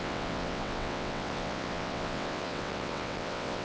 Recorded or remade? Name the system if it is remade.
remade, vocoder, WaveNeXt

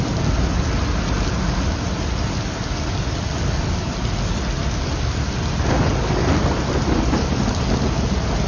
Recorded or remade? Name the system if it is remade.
recorded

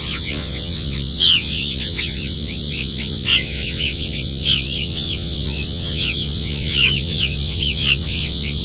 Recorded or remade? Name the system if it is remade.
remade, vocoder, WaveNeXt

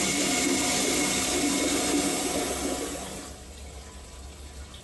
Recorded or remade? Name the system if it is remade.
recorded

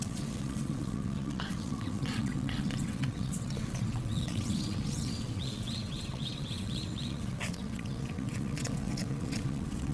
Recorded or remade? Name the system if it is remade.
remade, vocoder, WaveNeXt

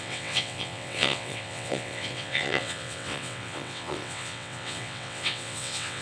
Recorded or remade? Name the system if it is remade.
remade, vocoder, WaveNeXt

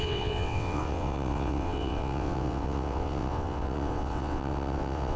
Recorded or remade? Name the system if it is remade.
remade, vocoder, WaveNeXt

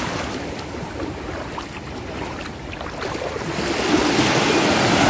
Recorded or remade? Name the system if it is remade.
recorded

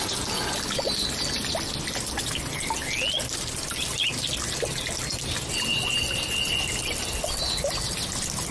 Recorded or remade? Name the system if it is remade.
recorded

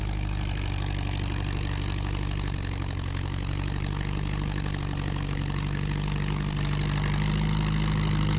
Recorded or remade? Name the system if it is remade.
recorded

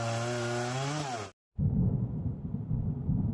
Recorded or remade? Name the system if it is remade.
recorded